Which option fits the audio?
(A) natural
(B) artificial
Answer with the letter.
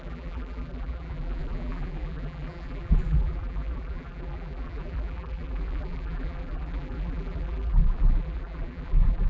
B